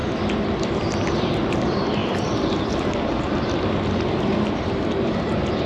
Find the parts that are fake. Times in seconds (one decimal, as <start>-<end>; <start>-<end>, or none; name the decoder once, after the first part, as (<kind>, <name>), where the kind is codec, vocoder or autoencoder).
0.6-5.7 (vocoder, BigVGAN v2)